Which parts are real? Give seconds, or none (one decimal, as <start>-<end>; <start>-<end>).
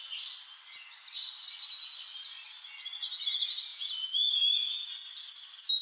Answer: 0.0-3.7; 4.4-5.8